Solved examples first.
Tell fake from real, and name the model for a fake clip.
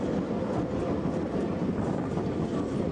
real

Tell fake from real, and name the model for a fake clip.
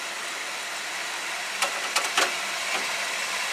real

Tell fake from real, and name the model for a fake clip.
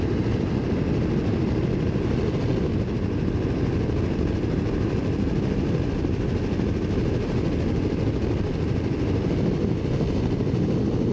real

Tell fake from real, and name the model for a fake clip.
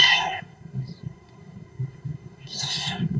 fake, codec, SNAC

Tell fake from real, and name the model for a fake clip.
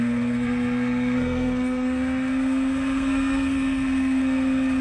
fake, codec, SNAC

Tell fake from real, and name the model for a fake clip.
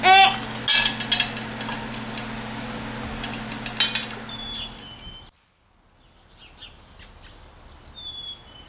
real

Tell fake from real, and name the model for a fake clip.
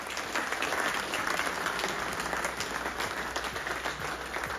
real